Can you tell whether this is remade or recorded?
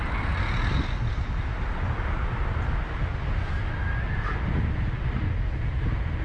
recorded